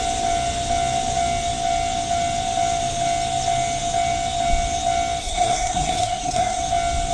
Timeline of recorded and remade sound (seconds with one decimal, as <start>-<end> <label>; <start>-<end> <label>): 0.0-5.2 recorded; 5.2-6.6 remade; 6.6-7.1 recorded